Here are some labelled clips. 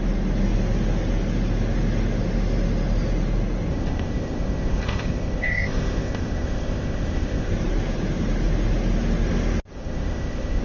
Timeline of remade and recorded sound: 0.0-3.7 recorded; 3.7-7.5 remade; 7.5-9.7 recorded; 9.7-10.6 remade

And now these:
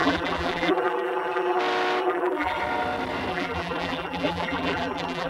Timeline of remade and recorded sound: 0.0-1.6 remade; 1.6-2.0 recorded; 2.0-2.6 remade; 2.6-3.3 recorded; 3.3-5.3 remade

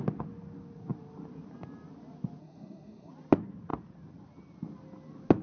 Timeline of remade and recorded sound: 0.0-2.4 recorded; 2.4-3.1 remade; 3.1-5.4 recorded

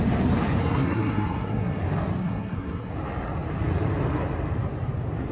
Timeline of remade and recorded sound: 0.0-0.6 recorded; 0.6-1.8 remade; 1.8-2.2 recorded; 2.2-2.9 remade; 2.9-5.3 recorded

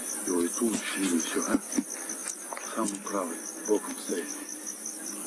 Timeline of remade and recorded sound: 0.0-5.3 recorded

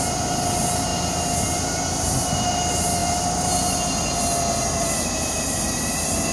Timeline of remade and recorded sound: 0.0-6.3 recorded